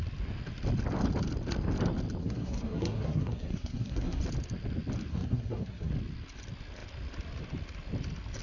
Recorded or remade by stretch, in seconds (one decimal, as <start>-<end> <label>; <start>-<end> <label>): 0.0-2.2 recorded; 2.2-4.2 remade; 4.2-5.1 recorded; 5.1-5.9 remade; 5.9-8.4 recorded